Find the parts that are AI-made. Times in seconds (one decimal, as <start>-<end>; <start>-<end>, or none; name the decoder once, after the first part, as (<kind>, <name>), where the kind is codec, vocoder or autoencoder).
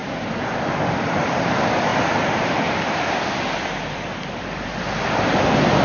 0.0-1.9 (vocoder, BigVGAN v2)